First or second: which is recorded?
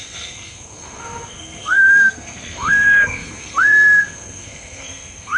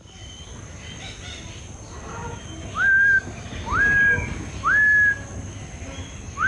second